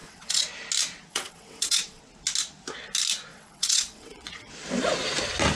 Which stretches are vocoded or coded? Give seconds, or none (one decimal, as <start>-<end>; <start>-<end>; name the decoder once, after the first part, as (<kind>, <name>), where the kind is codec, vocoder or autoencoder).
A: 0.0-0.5 (vocoder, WaveNeXt); 1.1-2.0; 3.3-4.5